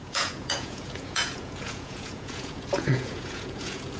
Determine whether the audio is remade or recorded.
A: remade